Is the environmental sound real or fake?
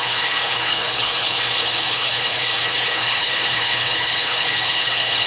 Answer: fake